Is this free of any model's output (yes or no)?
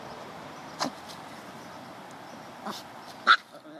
yes